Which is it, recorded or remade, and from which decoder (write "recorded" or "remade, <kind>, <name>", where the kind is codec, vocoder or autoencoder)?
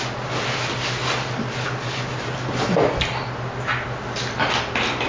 recorded